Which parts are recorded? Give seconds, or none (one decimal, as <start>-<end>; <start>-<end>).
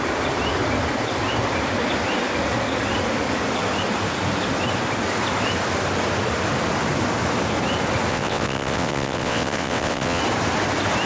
0.0-8.1; 10.2-11.1